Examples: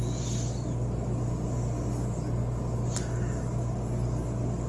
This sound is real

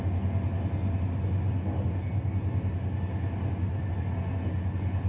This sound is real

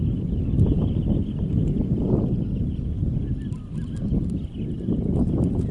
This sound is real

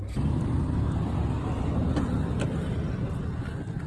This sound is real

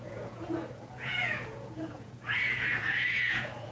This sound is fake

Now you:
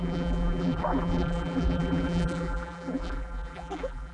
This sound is fake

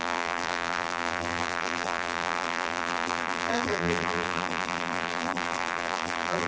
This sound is fake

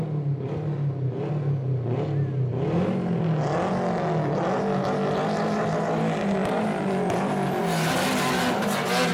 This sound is real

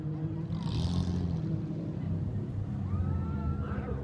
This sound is real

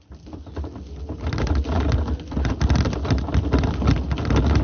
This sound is real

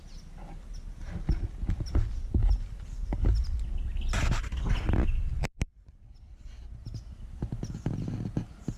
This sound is real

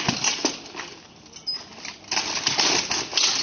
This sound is real